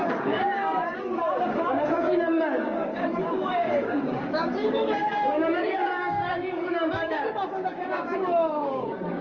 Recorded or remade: remade